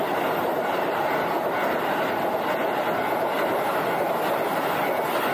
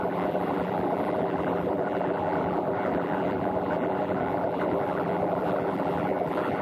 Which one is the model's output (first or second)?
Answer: second